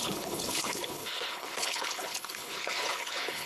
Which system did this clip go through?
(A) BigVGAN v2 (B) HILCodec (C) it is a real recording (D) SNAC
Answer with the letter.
B